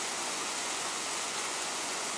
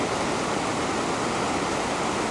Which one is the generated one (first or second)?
first